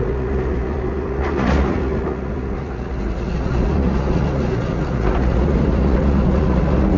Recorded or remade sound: remade